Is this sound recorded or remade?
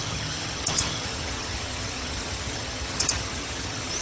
remade